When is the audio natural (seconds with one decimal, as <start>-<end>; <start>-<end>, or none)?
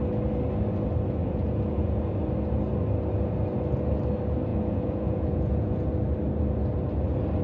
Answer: 0.0-1.2; 2.1-4.5; 5.9-7.4